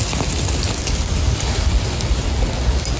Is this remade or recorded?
recorded